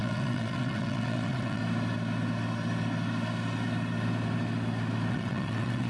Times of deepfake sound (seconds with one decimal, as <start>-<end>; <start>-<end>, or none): 0.0-1.6; 5.1-5.9